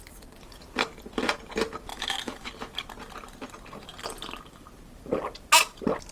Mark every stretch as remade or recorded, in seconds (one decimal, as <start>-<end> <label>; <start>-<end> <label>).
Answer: 0.0-1.9 recorded; 1.9-2.5 remade; 2.5-6.1 recorded